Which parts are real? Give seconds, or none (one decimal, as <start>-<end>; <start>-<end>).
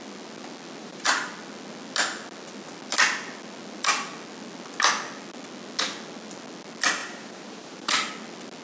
0.0-0.8; 1.3-7.0; 8.1-8.6